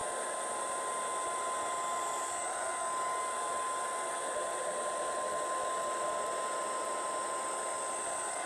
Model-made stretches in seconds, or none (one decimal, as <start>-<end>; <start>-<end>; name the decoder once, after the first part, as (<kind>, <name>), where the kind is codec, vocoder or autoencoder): none